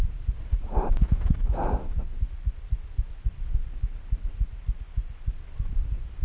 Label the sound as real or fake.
real